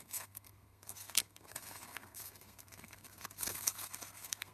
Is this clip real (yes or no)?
no